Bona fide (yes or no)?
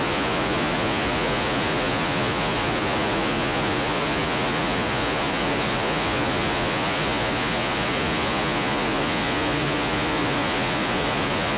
no